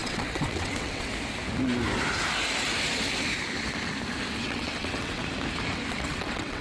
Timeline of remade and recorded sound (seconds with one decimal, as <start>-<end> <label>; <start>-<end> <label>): 0.0-1.1 remade; 1.1-4.3 recorded; 4.3-5.2 remade; 5.2-5.9 recorded; 5.9-6.6 remade